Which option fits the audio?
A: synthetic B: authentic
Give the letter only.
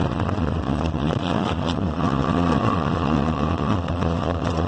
A